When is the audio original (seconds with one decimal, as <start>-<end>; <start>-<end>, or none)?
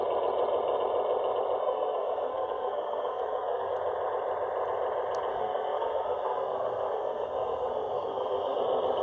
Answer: 0.0-1.6; 3.7-5.3; 8.6-9.0